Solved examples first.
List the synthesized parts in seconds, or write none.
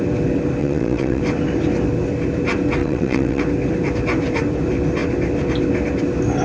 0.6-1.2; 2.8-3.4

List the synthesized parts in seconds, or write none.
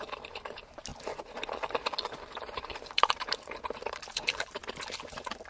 0.0-0.9; 2.7-4.6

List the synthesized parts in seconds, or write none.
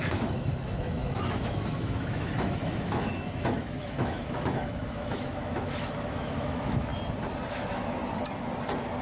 0.0-6.9; 7.5-8.0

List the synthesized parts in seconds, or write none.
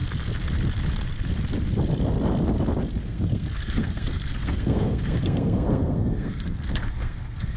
3.1-7.6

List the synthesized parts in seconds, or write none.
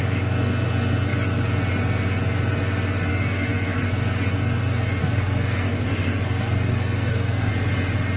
3.1-3.8; 5.0-7.5